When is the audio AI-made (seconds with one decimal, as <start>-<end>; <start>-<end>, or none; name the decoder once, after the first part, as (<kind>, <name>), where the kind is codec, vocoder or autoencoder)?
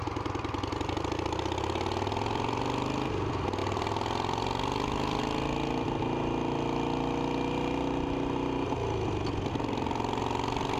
none